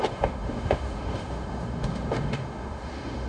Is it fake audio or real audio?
fake